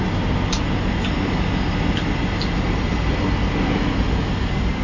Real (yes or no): yes